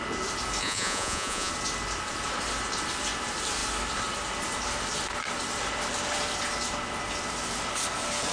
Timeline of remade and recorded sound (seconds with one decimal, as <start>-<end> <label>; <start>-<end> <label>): 0.0-0.6 recorded; 0.6-1.5 remade; 1.5-8.3 recorded